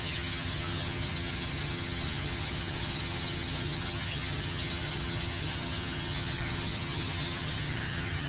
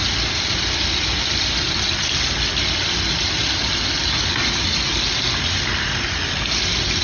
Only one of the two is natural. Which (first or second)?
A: second